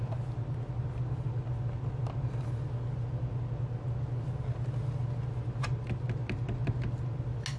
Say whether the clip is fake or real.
real